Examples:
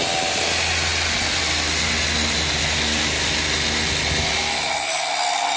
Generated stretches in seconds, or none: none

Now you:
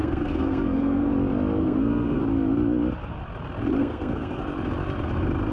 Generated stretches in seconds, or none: 0.0-1.1; 1.6-2.2; 3.8-4.4

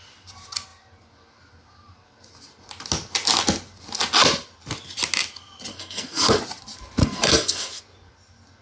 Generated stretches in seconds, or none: 5.7-6.4; 7.0-7.8